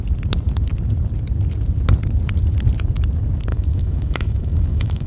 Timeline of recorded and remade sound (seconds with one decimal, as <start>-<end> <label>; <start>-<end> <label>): 0.0-3.5 recorded; 3.5-5.1 remade